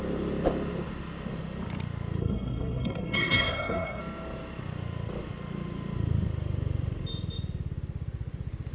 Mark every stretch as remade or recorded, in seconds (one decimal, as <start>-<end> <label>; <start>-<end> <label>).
0.0-2.2 recorded; 2.2-4.0 remade; 4.0-8.7 recorded